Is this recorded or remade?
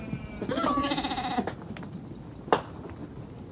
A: recorded